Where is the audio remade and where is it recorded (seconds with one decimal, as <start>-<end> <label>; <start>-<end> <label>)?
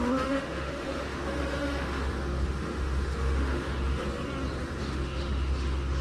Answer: 0.0-4.0 remade; 4.0-4.8 recorded; 4.8-6.0 remade